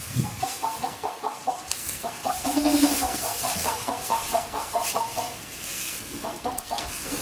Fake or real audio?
fake